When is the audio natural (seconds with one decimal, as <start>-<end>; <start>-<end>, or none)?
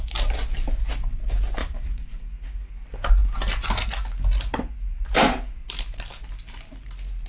0.0-1.6; 2.7-7.3